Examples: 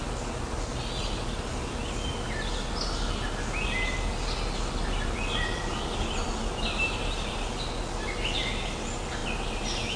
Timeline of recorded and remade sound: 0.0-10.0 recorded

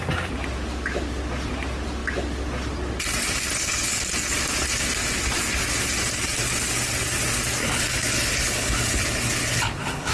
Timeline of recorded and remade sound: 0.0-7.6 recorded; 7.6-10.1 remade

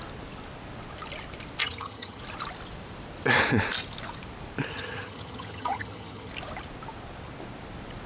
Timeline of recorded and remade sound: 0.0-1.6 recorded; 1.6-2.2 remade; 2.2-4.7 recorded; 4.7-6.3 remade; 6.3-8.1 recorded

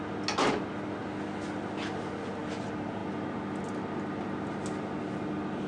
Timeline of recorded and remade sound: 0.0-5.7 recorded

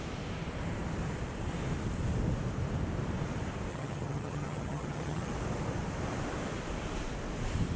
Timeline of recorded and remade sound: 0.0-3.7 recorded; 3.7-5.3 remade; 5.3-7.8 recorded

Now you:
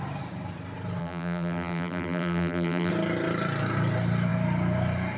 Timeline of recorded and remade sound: 0.0-1.0 recorded; 1.0-2.9 remade; 2.9-5.2 recorded